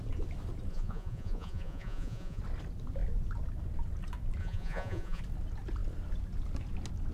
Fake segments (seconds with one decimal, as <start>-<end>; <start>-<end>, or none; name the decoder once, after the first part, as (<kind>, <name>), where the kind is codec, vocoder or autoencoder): 0.7-2.4 (vocoder, Vocos); 4.4-5.2